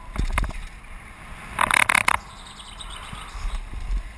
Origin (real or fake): real